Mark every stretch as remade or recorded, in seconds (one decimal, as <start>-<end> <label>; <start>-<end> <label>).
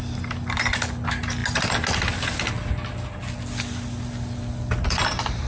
0.0-5.5 recorded